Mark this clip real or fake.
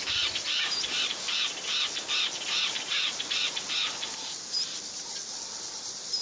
fake